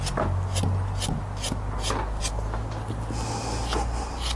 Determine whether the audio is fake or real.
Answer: real